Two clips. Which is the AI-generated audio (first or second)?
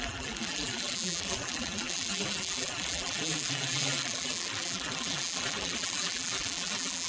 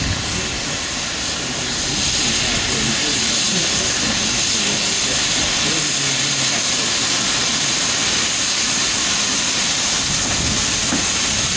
first